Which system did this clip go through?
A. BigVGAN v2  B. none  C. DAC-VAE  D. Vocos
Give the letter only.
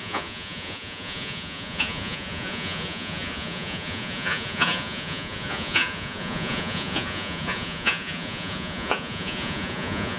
D